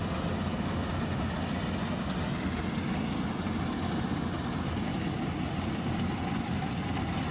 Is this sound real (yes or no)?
yes